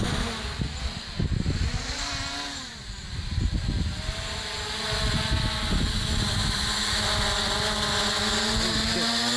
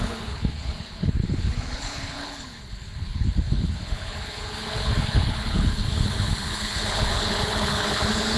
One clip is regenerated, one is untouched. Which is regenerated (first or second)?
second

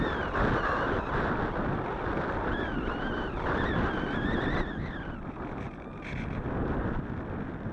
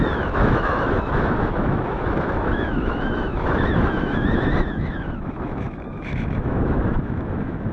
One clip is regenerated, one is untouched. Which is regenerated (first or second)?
second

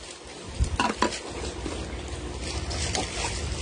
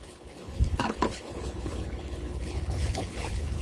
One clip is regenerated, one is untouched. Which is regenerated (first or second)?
second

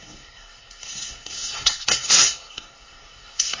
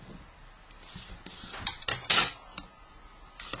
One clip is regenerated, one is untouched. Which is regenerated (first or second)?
first